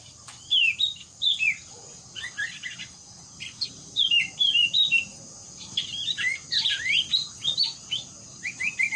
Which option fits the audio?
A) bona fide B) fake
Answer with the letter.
A